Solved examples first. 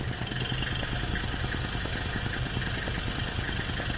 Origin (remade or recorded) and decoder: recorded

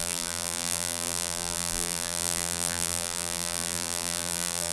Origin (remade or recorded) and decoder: remade, vocoder, BigVGAN v2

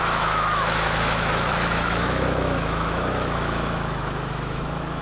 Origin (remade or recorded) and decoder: remade, autoencoder, DAC-VAE